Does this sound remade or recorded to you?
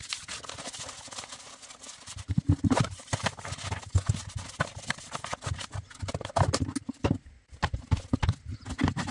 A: recorded